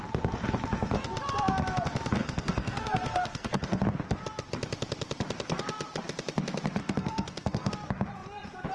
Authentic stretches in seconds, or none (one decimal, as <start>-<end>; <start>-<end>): 0.0-2.2; 3.8-6.8; 7.7-8.7